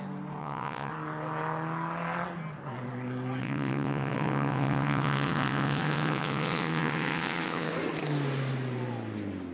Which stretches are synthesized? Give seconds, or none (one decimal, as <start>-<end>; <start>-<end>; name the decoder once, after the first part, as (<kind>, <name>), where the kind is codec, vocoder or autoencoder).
0.4-0.9 (vocoder, WaveNeXt); 3.4-7.7